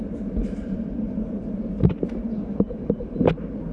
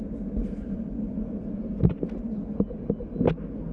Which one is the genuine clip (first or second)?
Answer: second